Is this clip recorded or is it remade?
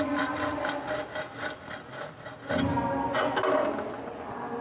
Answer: recorded